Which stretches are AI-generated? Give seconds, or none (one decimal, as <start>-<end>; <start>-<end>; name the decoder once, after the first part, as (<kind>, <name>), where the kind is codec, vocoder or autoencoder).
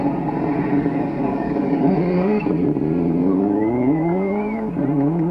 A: 0.7-2.4 (codec, DAC); 3.2-4.7